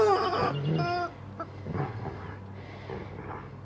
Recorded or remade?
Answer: recorded